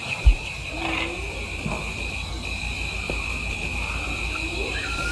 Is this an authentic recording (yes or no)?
yes